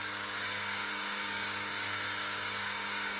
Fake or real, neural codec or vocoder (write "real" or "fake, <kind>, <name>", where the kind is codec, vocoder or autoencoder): fake, codec, DAC